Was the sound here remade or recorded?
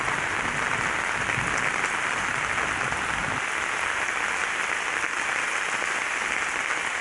recorded